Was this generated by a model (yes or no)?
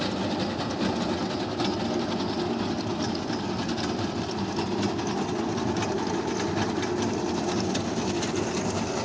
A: no